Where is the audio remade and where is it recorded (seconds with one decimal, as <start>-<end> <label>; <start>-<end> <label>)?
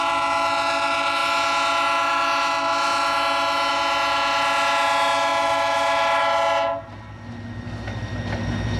0.0-8.8 recorded